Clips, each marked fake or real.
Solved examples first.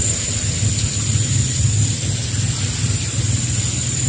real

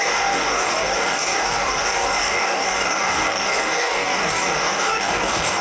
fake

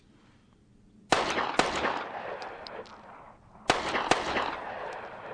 real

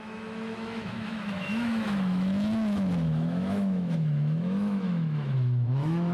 fake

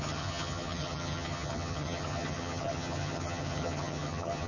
fake